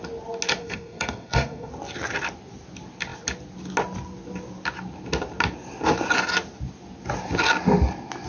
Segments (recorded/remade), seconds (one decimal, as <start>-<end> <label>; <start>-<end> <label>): 0.0-0.6 recorded; 0.6-1.7 remade; 1.7-8.3 recorded